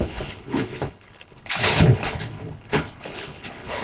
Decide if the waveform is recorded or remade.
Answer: remade